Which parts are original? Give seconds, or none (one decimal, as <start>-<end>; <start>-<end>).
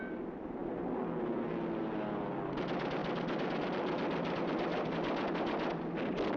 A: 0.0-6.4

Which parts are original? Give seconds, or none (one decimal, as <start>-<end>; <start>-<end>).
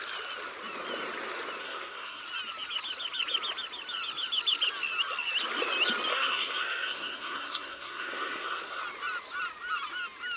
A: 0.0-1.6; 2.2-6.1; 8.8-10.4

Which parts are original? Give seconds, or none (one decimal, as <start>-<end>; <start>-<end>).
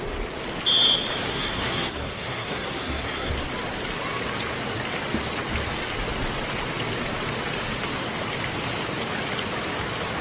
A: 0.0-1.3; 3.3-10.2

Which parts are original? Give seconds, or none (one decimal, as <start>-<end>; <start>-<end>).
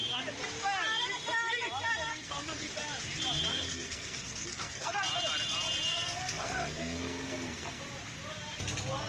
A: 0.0-2.1; 2.7-3.5; 5.0-5.9; 7.8-9.1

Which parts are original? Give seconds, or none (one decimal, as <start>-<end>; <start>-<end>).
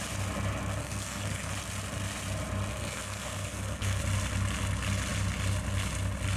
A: 0.0-0.8; 1.5-2.7; 4.0-6.4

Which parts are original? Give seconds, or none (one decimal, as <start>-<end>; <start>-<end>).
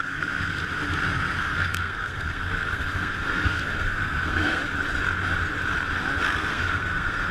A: 0.6-1.4; 4.6-6.2